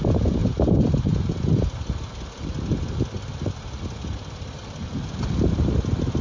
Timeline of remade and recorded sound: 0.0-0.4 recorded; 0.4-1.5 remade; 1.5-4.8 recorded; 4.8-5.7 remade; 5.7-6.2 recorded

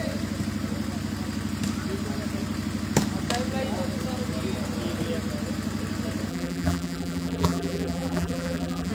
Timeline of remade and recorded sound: 0.0-6.3 recorded; 6.3-8.9 remade

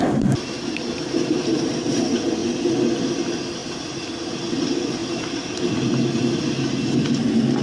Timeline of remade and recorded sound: 0.0-2.4 remade; 2.4-3.1 recorded; 3.1-3.6 remade; 3.6-4.5 recorded; 4.5-5.0 remade; 5.0-7.6 recorded

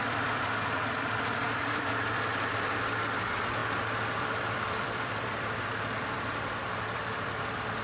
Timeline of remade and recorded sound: 0.0-3.6 remade; 3.6-4.2 recorded; 4.2-7.8 remade

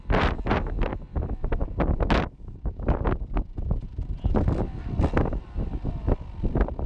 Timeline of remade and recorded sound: 0.0-6.9 recorded

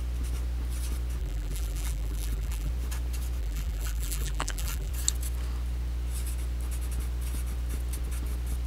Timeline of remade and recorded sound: 0.0-1.2 recorded; 1.2-2.7 remade; 2.7-3.4 recorded; 3.4-4.9 remade; 4.9-8.7 recorded

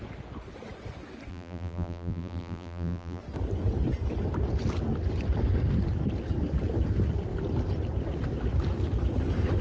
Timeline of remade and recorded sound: 0.0-1.3 recorded; 1.3-3.2 remade; 3.2-9.6 recorded

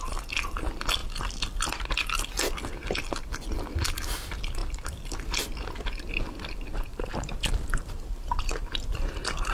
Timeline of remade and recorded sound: 0.0-6.7 recorded; 6.7-8.6 remade; 8.6-9.5 recorded